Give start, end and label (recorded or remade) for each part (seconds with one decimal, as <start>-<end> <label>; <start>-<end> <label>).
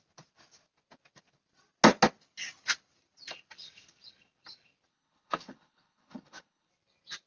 0.0-4.9 recorded; 4.9-6.7 remade; 6.7-7.3 recorded